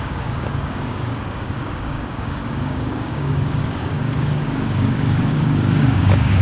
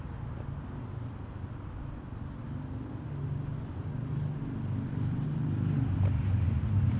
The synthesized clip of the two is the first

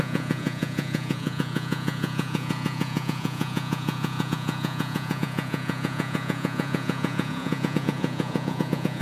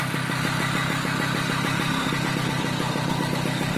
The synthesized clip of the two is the first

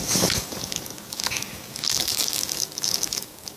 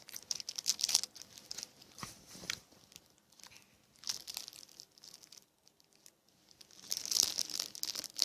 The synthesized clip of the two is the first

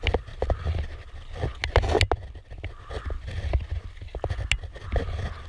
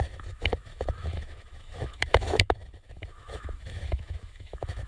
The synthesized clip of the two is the second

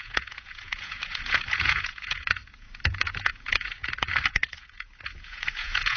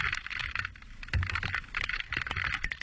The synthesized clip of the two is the first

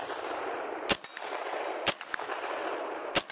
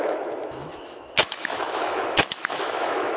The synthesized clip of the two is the second